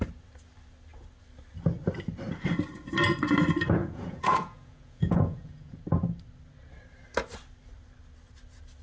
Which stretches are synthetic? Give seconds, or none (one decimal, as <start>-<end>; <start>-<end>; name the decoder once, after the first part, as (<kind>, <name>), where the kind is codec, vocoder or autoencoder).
3.8-5.8 (vocoder, Vocos)